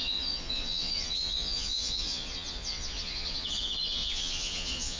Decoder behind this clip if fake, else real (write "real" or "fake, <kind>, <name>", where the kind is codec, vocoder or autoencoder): fake, vocoder, Vocos